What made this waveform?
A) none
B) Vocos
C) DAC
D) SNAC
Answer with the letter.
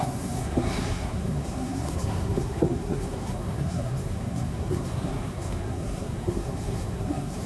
D